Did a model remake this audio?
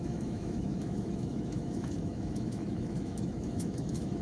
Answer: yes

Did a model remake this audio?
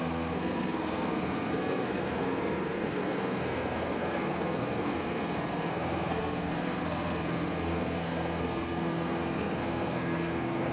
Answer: yes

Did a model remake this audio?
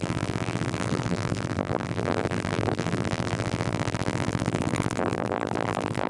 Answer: yes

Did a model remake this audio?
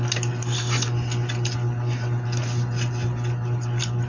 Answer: no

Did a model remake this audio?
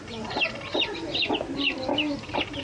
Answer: no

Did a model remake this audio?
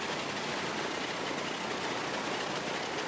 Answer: no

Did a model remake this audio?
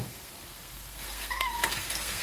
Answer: yes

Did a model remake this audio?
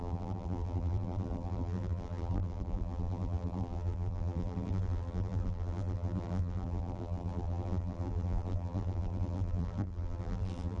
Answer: yes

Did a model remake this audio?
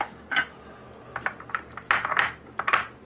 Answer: no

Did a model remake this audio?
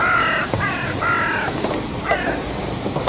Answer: no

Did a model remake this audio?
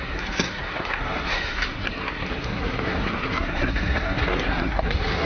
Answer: yes